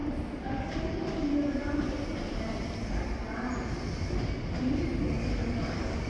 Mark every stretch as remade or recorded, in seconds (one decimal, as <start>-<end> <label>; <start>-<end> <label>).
0.0-0.5 recorded; 0.5-1.3 remade; 1.3-5.0 recorded; 5.0-6.1 remade